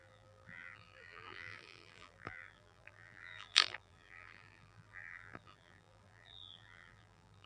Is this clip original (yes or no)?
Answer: no